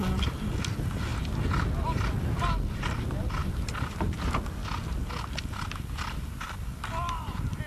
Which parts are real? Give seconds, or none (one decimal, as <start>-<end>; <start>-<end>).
0.0-7.7